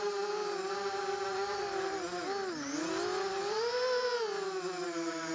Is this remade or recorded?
recorded